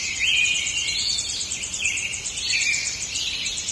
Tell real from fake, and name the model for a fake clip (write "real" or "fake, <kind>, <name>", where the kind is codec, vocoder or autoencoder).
real